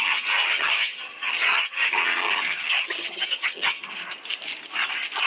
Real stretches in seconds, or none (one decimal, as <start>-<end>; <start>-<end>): 4.0-5.3